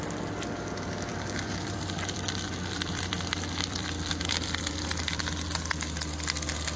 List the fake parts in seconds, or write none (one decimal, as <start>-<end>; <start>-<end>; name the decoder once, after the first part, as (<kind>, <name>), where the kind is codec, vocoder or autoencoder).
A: 1.1-5.2 (vocoder, BigVGAN v2)

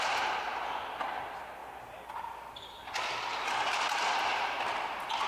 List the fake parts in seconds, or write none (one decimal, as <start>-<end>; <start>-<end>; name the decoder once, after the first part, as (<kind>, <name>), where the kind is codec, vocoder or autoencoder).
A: none

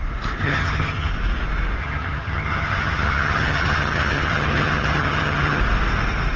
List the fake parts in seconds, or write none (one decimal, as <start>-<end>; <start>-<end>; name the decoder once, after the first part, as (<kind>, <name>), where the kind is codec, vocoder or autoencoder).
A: 0.4-1.1 (vocoder, HiFi-GAN); 1.8-5.6

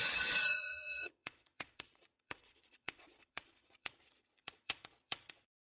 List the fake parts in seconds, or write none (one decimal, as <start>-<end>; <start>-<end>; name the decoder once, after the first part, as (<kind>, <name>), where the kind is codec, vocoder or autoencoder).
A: 0.0-5.8 (vocoder, Vocos)

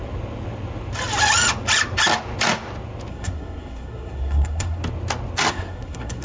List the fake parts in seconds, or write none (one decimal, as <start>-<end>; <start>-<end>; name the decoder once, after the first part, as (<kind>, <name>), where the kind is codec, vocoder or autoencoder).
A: 3.1-4.8 (codec, SNAC); 5.5-6.2

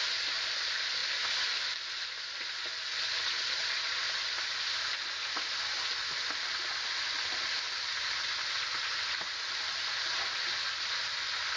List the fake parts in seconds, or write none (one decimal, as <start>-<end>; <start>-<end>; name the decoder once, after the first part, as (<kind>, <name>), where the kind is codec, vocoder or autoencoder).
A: none

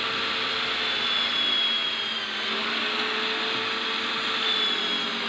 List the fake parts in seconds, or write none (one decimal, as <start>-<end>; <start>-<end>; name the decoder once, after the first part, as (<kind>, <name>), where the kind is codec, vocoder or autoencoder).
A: none